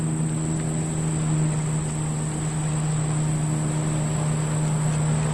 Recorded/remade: recorded